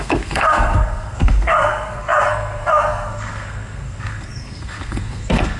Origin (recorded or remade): remade